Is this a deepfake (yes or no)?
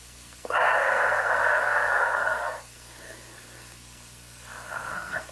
yes